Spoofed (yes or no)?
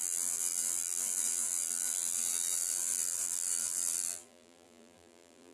yes